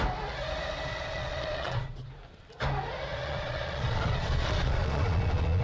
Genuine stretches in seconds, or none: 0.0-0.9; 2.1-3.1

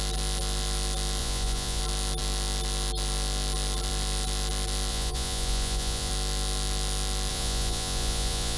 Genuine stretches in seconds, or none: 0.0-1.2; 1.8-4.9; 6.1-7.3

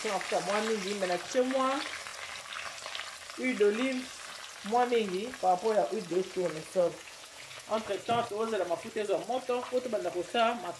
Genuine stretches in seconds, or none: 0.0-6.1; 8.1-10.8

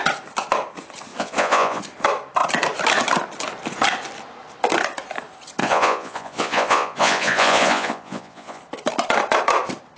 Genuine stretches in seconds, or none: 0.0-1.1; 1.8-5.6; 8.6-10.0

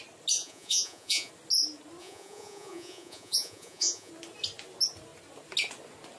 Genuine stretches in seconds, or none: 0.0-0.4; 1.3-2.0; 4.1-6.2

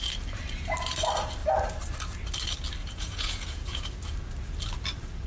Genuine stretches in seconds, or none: 0.0-2.8; 3.8-5.3

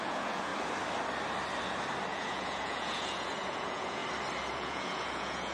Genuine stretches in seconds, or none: 0.5-2.1; 4.0-4.5

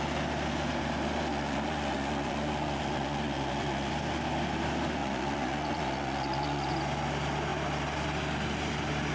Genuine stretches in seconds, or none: 0.0-1.3; 3.9-5.0; 6.7-9.1